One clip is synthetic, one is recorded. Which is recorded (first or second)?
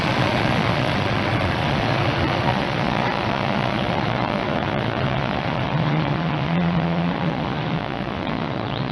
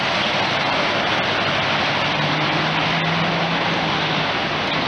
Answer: second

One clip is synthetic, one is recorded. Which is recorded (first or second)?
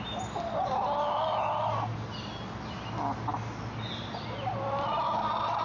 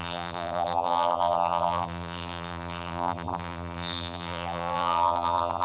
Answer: first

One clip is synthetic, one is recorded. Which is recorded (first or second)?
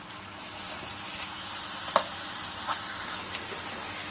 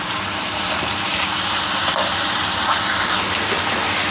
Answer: first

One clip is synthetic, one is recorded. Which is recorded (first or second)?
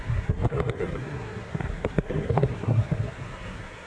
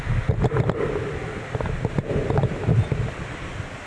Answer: second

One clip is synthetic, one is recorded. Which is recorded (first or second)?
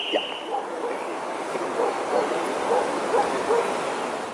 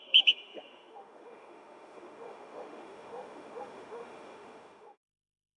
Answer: first